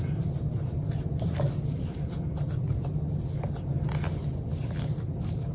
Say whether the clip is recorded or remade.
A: recorded